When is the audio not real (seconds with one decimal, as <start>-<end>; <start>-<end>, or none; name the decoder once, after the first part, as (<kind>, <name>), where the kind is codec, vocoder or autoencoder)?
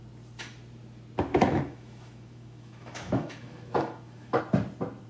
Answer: 1.3-4.4 (autoencoder, DAC-VAE)